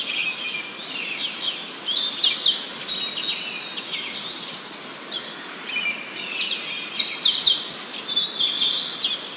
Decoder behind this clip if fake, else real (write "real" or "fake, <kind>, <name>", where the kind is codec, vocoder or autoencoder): real